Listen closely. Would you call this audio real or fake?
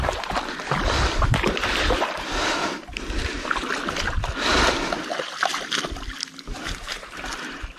real